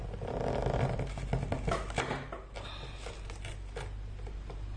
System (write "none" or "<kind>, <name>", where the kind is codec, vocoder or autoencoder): none